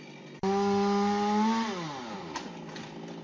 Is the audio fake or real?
real